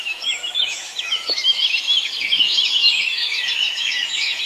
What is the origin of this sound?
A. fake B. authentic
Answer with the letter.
A